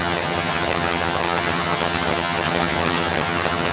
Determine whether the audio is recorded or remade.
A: remade